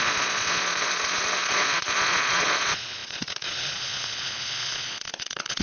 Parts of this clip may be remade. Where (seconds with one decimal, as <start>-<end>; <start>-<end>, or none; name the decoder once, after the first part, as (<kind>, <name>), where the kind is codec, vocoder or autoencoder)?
0.0-5.6 (vocoder, Vocos)